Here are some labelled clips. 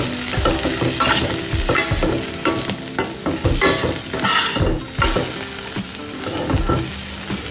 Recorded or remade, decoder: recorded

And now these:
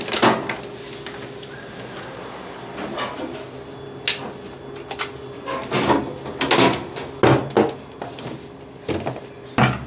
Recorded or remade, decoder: recorded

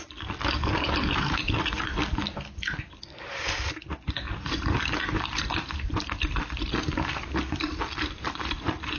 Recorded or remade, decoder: recorded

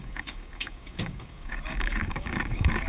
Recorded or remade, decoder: remade, codec, DAC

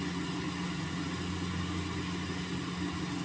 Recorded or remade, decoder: recorded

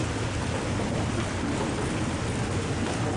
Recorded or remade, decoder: recorded